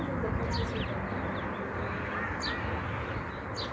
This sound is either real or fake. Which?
real